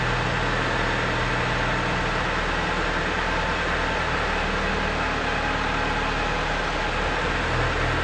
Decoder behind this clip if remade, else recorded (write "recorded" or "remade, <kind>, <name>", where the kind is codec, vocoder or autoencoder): recorded